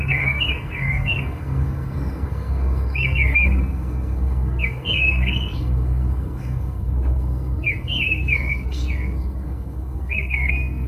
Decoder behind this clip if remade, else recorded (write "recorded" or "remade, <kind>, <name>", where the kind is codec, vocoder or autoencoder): remade, codec, SNAC